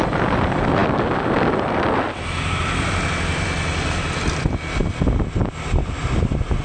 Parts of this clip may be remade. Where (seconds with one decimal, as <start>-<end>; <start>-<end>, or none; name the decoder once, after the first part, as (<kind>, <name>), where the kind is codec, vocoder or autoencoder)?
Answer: none